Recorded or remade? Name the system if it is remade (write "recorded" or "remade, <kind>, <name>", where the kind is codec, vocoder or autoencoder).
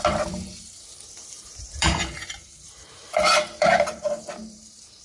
remade, vocoder, BigVGAN v2